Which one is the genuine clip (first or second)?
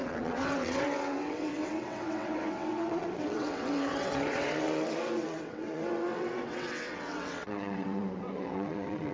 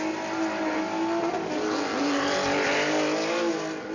second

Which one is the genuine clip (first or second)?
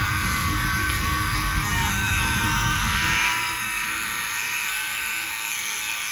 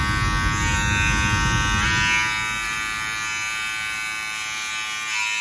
second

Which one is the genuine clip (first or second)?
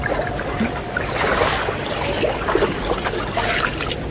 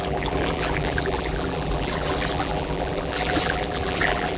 first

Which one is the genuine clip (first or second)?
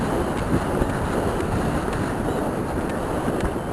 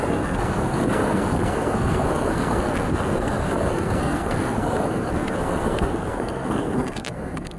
first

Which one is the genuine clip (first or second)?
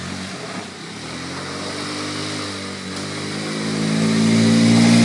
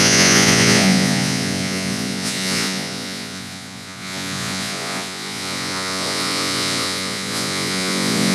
first